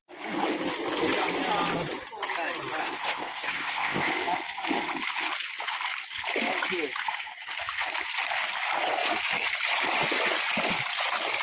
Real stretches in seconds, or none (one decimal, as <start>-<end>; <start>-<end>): 0.0-2.8; 4.1-11.4